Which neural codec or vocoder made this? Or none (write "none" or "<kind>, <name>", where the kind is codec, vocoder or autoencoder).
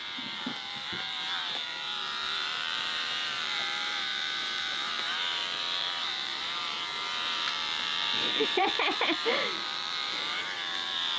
vocoder, BigVGAN v2